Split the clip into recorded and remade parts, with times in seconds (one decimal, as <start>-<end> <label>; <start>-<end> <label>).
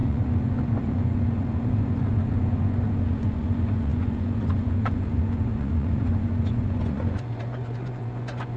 0.0-8.6 remade